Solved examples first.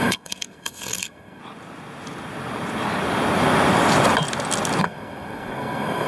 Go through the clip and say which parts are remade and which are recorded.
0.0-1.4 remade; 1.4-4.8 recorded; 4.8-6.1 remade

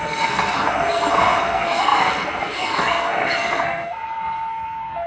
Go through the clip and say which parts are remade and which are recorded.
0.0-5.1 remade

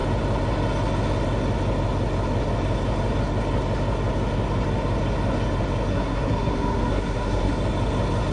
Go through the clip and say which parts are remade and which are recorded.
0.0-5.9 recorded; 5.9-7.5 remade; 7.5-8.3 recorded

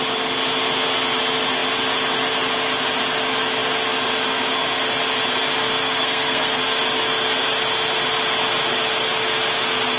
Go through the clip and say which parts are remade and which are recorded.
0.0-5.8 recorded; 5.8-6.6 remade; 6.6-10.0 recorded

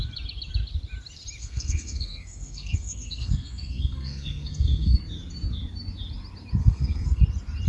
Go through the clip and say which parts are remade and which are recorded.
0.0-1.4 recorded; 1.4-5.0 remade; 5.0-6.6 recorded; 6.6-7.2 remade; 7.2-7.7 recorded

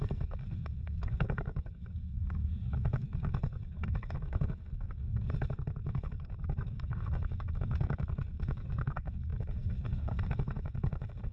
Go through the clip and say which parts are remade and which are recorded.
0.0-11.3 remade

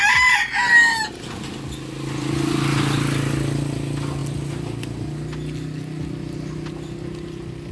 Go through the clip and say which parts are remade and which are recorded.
0.0-7.7 recorded

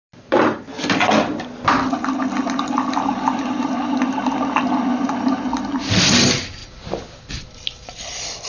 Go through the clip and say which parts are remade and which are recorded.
0.0-8.5 recorded